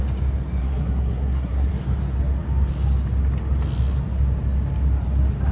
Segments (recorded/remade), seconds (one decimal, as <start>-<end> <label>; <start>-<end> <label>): 0.0-0.6 recorded; 0.6-1.7 remade; 1.7-5.5 recorded